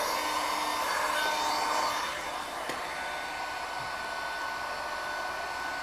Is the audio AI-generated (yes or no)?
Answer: no